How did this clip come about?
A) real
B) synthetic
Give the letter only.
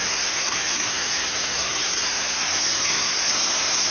B